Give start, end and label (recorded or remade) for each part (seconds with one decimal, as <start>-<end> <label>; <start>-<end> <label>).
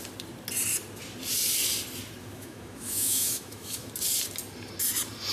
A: 0.0-2.2 recorded; 2.2-3.9 remade; 3.9-5.3 recorded